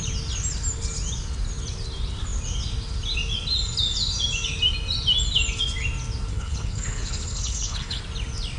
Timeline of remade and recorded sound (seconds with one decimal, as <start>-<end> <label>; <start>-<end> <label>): 0.0-6.3 recorded; 6.3-8.0 remade; 8.0-8.6 recorded